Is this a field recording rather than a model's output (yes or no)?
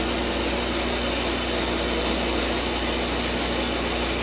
yes